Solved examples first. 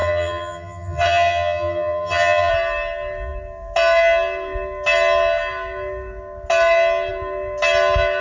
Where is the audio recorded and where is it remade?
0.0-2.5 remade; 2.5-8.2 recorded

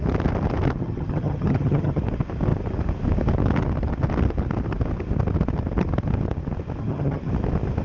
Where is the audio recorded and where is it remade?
0.0-0.8 recorded; 0.8-2.0 remade; 2.0-6.8 recorded; 6.8-7.3 remade; 7.3-7.8 recorded

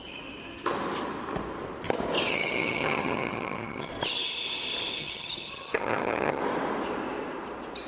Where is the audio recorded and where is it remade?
0.0-2.3 recorded; 2.3-3.9 remade; 3.9-5.0 recorded; 5.0-6.4 remade; 6.4-7.9 recorded

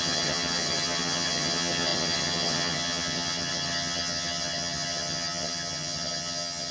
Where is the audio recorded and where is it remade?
0.0-6.7 remade

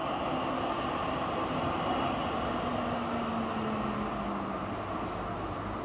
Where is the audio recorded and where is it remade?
0.0-5.8 recorded

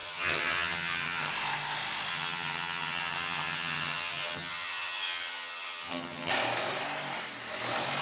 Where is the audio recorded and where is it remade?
0.0-1.3 remade; 1.3-2.1 recorded; 2.1-6.3 remade; 6.3-8.0 recorded

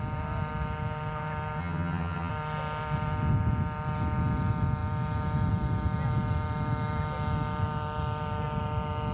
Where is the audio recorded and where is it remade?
0.0-1.6 recorded; 1.6-2.3 remade; 2.3-9.1 recorded